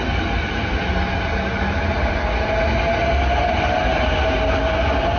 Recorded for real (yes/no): yes